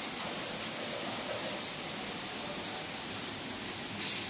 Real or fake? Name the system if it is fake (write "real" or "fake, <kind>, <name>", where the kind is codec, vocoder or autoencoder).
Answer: real